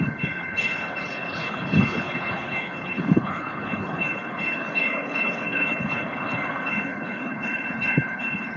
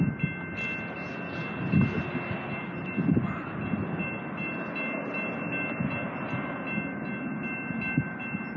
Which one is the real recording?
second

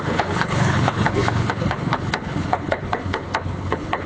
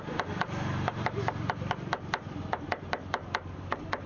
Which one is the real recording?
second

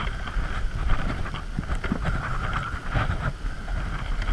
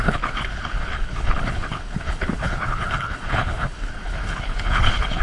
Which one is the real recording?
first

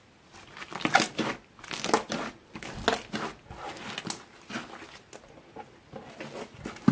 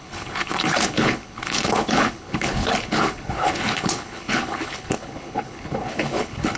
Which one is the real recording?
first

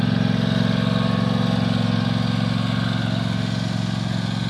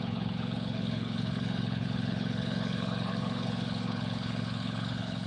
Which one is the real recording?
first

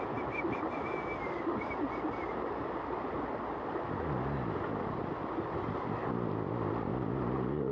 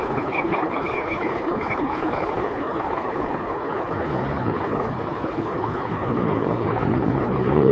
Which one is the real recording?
first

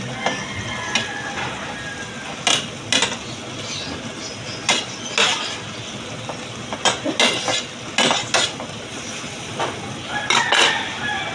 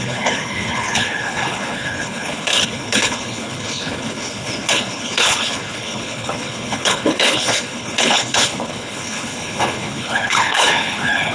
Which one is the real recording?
first